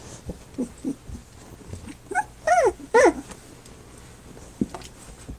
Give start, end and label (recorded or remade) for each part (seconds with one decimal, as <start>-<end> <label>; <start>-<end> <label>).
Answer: 0.0-5.4 recorded